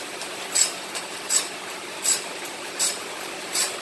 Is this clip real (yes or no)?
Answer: no